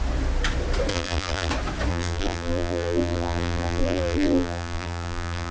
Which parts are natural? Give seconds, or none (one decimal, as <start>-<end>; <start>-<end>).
0.0-0.9; 1.5-1.9